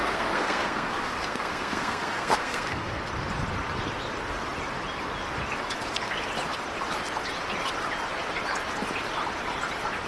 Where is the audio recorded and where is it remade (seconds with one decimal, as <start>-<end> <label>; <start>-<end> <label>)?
0.0-3.0 remade; 3.0-10.1 recorded